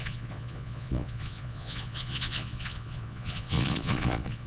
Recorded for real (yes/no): no